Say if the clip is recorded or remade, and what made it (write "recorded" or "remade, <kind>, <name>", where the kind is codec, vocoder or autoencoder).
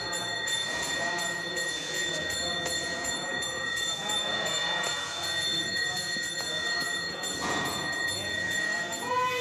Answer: remade, vocoder, Vocos